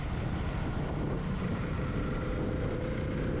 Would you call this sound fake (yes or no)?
no